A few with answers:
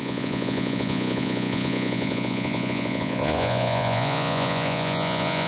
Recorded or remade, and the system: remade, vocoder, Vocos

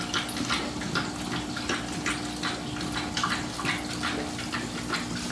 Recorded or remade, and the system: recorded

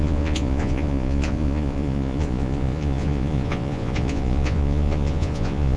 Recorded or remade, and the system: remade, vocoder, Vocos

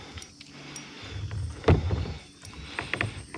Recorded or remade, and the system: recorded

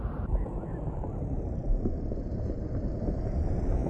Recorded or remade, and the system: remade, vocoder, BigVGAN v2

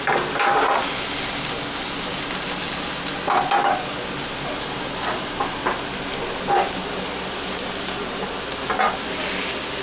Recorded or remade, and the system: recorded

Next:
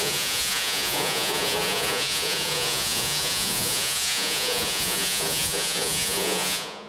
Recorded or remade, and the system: remade, vocoder, Vocos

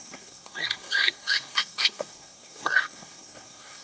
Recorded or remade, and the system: remade, codec, SNAC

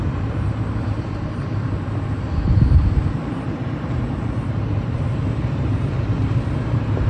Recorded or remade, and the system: remade, vocoder, BigVGAN v2